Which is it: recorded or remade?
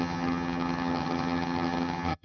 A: remade